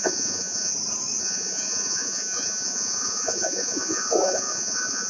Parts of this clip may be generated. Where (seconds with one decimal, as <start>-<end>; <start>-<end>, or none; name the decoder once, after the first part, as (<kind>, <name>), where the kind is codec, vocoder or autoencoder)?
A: 0.0-0.7 (vocoder, Vocos); 1.2-5.1